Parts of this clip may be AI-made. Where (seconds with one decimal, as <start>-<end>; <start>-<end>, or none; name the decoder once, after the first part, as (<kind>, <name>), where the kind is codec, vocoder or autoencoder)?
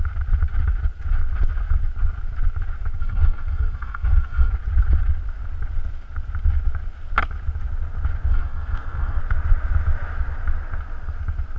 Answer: 3.0-4.5 (codec, SNAC); 8.3-9.2